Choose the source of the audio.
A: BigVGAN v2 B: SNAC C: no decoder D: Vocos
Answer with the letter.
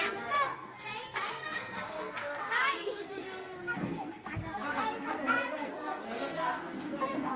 B